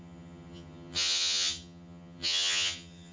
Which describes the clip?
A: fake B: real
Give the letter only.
A